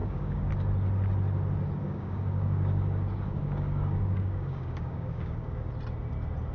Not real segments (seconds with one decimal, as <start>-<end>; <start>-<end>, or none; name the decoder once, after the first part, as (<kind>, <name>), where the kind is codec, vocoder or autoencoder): 0.0-0.5 (codec, DAC); 1.8-5.7